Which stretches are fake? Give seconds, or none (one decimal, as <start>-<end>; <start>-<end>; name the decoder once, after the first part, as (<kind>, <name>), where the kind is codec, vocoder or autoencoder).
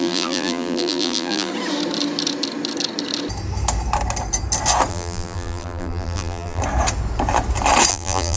0.0-1.5 (vocoder, BigVGAN v2); 4.9-6.6; 7.9-8.4